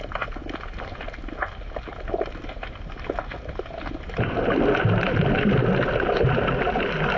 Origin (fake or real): real